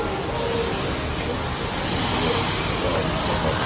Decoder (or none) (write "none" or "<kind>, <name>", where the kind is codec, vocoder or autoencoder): none